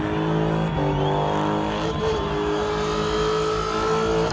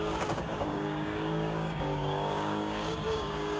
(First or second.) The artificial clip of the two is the second